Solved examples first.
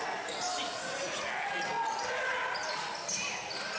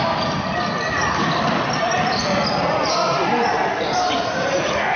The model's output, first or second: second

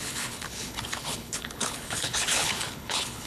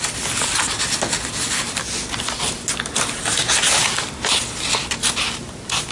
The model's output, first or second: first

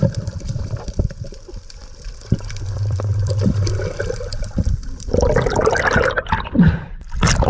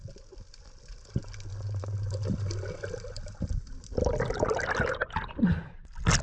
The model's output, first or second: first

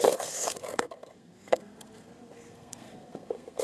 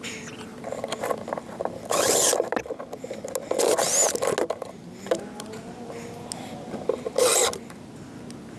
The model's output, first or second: first